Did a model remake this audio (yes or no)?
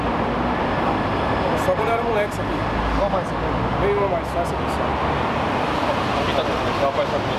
no